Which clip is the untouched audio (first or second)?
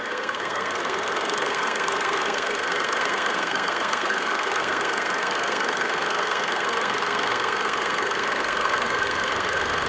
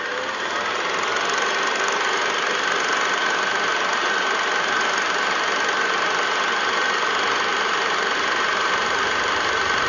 second